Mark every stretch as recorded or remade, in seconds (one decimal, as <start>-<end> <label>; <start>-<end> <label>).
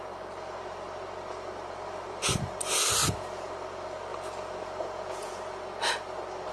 0.0-3.0 recorded; 3.0-3.5 remade; 3.5-4.1 recorded; 4.1-5.4 remade; 5.4-6.5 recorded